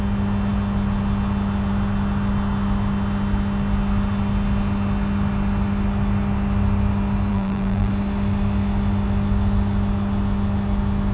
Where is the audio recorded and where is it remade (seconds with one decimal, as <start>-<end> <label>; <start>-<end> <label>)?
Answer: 0.0-7.3 recorded; 7.3-7.9 remade; 7.9-11.1 recorded